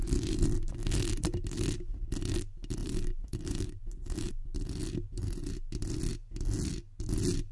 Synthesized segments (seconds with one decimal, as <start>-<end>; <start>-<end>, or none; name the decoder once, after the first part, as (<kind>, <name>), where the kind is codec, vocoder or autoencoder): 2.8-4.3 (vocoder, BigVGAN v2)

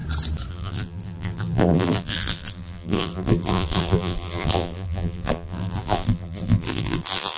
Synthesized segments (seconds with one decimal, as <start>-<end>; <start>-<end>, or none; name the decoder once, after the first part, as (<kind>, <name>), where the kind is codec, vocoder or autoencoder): 0.5-7.4 (vocoder, BigVGAN v2)

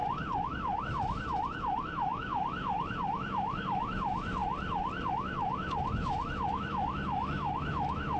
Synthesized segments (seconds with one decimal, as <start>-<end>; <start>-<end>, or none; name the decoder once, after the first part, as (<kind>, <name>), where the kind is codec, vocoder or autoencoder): 0.0-4.4 (autoencoder, DAC-VAE); 5.1-8.2